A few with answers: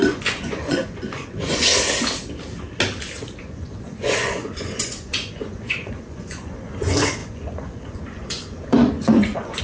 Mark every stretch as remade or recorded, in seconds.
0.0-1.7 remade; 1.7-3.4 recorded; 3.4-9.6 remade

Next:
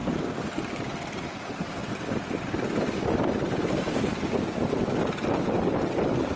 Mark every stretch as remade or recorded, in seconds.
0.0-1.8 recorded; 1.8-5.6 remade; 5.6-6.4 recorded

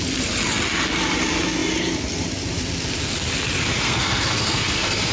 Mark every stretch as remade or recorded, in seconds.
0.0-3.7 recorded; 3.7-5.1 remade

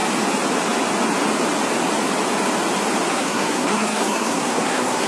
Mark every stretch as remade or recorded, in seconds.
0.0-3.1 recorded; 3.1-5.1 remade

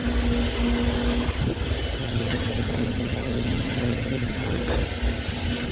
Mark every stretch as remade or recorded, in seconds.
0.0-2.0 recorded; 2.0-4.6 remade; 4.6-5.7 recorded

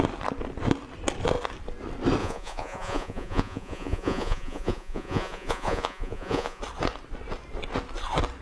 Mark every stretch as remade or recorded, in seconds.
0.0-2.2 recorded; 2.2-6.6 remade; 6.6-8.4 recorded